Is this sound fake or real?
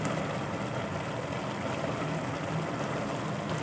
real